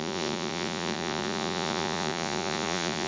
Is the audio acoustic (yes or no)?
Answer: no